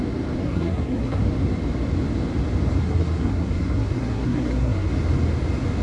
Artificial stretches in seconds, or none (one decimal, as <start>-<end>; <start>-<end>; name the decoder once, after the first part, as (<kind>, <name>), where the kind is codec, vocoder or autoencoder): 0.4-1.2 (codec, SNAC); 2.8-4.9